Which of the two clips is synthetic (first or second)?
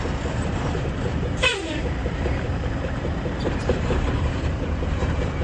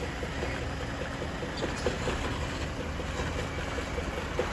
first